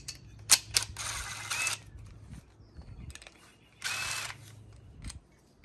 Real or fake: real